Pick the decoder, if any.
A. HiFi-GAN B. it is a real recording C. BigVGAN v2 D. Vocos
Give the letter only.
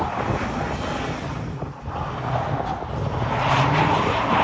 B